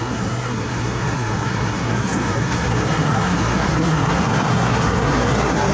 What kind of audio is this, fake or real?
fake